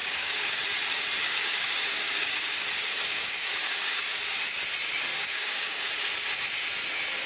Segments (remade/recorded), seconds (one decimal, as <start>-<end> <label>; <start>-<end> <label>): 0.0-0.6 remade; 0.6-1.2 recorded; 1.2-4.5 remade; 4.5-5.1 recorded; 5.1-5.9 remade; 5.9-7.3 recorded